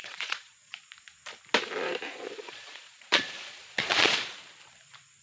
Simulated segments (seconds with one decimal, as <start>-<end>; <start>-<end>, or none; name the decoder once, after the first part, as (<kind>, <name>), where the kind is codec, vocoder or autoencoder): 0.0-0.8 (vocoder, Vocos); 2.1-4.3